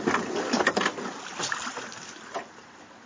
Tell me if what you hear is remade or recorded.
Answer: recorded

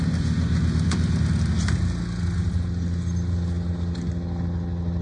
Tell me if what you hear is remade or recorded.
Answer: recorded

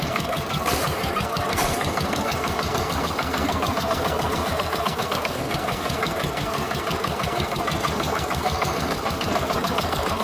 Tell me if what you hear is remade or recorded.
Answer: remade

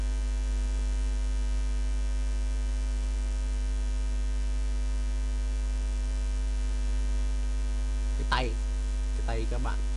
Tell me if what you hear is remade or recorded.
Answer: recorded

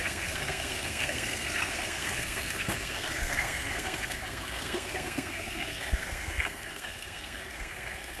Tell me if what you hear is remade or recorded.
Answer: remade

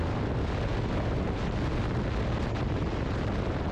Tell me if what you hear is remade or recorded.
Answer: recorded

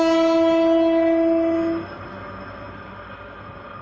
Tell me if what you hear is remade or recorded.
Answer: recorded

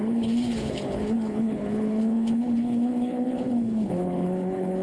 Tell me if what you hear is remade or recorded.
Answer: remade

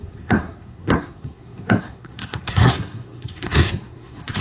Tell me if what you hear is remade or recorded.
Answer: remade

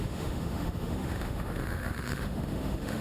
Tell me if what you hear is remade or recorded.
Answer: remade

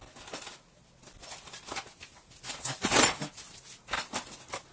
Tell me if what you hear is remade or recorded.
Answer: recorded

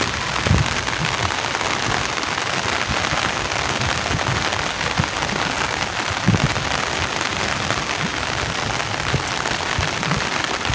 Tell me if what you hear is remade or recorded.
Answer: recorded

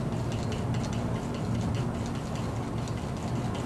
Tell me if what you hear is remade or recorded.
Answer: recorded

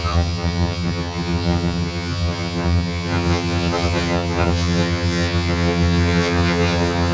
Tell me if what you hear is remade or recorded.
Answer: remade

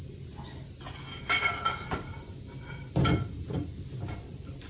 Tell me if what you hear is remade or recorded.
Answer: recorded